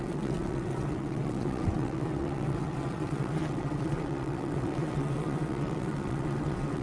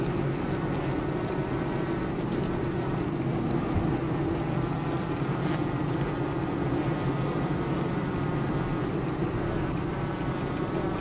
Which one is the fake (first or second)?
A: first